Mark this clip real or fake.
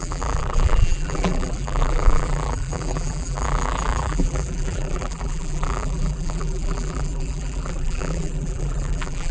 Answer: fake